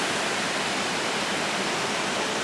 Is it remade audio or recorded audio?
remade